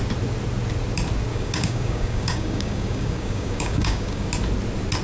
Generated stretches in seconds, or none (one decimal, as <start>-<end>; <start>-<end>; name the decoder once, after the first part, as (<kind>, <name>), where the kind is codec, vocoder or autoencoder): 1.3-4.3 (codec, DAC)